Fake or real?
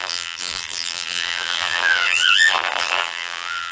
fake